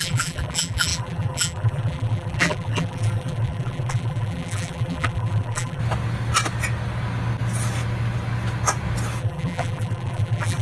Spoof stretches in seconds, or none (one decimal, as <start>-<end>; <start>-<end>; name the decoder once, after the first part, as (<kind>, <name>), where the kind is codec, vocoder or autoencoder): 0.0-5.8 (vocoder, BigVGAN v2); 9.2-10.6